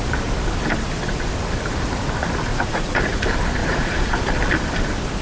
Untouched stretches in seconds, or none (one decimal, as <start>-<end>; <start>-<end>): 0.0-2.5; 3.2-3.6; 4.2-5.2